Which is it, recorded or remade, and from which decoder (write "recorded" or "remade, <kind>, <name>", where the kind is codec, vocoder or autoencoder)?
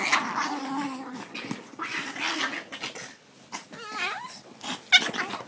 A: recorded